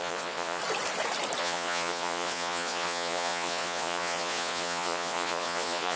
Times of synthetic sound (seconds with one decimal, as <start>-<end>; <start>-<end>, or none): 0.0-0.6; 1.4-6.0